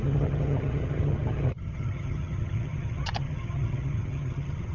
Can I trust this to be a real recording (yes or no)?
no